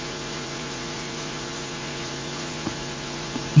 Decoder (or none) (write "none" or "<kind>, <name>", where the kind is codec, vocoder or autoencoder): vocoder, Vocos